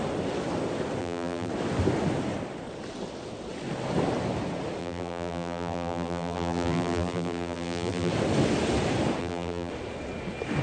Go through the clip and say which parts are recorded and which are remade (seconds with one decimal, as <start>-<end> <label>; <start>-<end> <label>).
0.0-1.0 recorded; 1.0-1.5 remade; 1.5-4.8 recorded; 4.8-8.1 remade; 8.1-9.2 recorded; 9.2-9.7 remade; 9.7-10.6 recorded